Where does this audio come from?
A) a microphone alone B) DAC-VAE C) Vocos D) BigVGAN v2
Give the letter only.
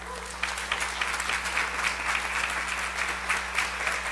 A